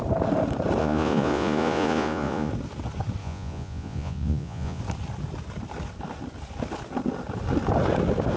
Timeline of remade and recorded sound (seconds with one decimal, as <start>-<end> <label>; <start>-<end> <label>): 0.0-0.8 recorded; 0.8-2.5 remade; 2.5-3.2 recorded; 3.2-4.8 remade; 4.8-8.4 recorded

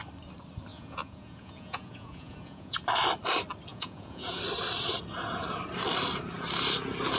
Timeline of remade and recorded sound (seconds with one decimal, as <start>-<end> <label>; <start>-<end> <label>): 0.0-0.7 recorded; 0.7-2.8 remade; 2.8-3.7 recorded; 3.7-4.4 remade; 4.4-7.2 recorded

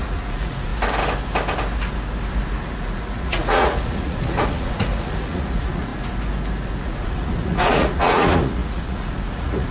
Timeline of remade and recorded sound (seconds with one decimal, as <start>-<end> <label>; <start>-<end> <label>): 0.0-0.7 remade; 0.7-2.8 recorded; 2.8-5.9 remade; 5.9-6.8 recorded; 6.8-9.7 remade

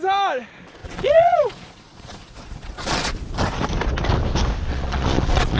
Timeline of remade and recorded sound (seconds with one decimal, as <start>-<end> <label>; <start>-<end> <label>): 0.0-0.8 recorded; 0.8-3.1 remade; 3.1-4.7 recorded; 4.7-5.6 remade

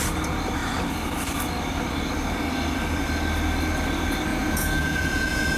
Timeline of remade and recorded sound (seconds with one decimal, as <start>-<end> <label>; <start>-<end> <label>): 0.0-4.3 recorded; 4.3-5.6 remade

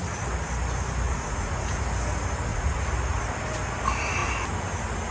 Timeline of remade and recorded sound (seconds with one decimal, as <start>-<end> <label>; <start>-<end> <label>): 0.0-1.1 recorded; 1.1-1.8 remade; 1.8-2.5 recorded; 2.5-3.2 remade; 3.2-5.1 recorded

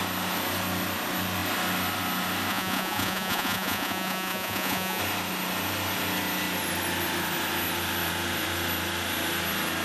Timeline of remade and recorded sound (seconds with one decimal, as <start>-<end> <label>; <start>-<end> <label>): 0.0-2.5 recorded; 2.5-5.0 remade; 5.0-9.8 recorded